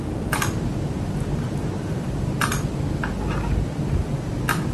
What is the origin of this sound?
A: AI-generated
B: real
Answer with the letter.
B